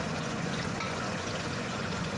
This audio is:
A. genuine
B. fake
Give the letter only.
B